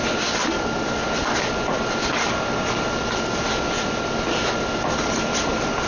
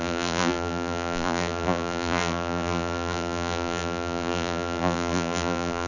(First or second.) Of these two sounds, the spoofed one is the second